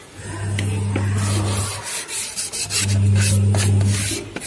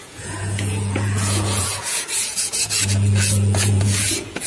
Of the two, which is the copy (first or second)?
second